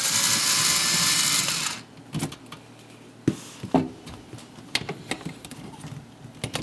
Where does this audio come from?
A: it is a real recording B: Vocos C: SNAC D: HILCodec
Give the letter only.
A